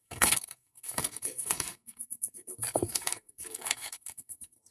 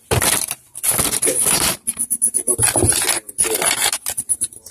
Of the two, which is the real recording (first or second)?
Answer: second